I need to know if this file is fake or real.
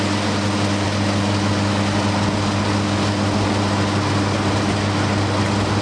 real